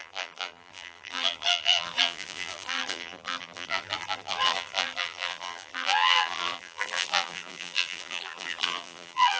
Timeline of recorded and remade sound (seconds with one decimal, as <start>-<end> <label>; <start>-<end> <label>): 0.0-9.4 remade

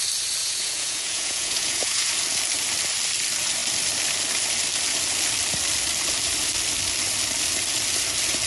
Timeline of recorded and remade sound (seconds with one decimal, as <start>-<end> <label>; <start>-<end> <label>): 0.0-0.4 recorded; 0.4-2.1 remade; 2.1-8.5 recorded

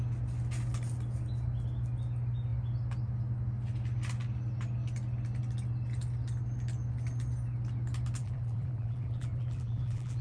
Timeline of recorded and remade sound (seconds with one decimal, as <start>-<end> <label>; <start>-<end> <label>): 0.0-8.2 recorded; 8.2-10.2 remade

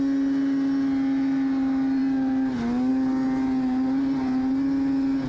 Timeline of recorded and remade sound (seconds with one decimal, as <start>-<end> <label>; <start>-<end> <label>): 0.0-5.3 recorded

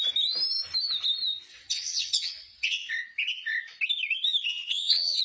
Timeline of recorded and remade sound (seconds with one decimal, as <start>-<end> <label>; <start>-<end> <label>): 0.0-1.5 recorded; 1.5-2.9 remade; 2.9-4.5 recorded; 4.5-5.2 remade

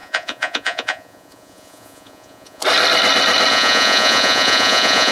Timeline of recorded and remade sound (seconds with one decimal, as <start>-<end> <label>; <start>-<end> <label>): 0.0-2.6 remade; 2.6-3.5 recorded; 3.5-5.1 remade

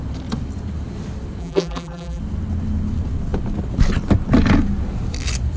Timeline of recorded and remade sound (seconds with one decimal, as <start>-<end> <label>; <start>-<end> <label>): 0.0-1.4 recorded; 1.4-2.2 remade; 2.2-5.6 recorded